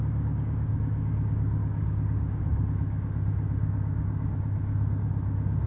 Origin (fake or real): fake